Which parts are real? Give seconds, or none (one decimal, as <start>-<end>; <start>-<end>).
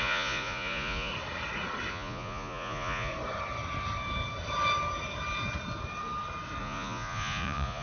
1.1-1.9; 3.1-6.6